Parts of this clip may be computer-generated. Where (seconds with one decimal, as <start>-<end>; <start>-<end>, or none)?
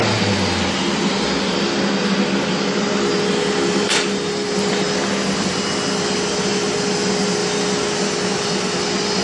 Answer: none